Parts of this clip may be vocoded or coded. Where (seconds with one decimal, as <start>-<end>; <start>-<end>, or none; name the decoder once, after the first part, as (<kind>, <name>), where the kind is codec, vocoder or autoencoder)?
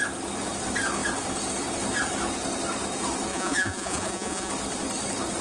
3.3-4.5 (vocoder, Vocos)